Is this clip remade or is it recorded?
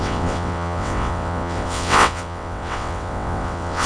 remade